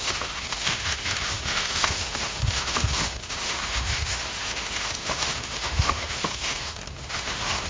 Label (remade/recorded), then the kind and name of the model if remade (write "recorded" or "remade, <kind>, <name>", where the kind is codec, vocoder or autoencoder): remade, autoencoder, DAC-VAE